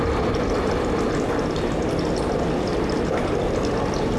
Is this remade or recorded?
recorded